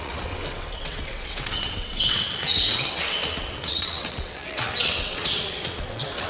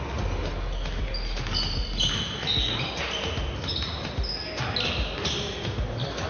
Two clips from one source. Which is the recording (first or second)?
second